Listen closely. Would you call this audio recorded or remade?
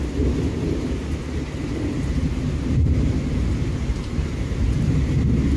remade